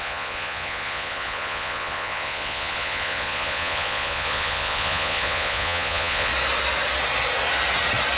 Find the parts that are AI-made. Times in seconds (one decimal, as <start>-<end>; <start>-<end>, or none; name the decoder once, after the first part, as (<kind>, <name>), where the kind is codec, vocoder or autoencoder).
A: 0.0-6.3 (vocoder, Vocos)